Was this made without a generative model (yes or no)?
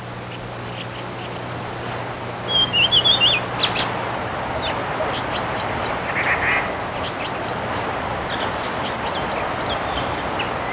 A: yes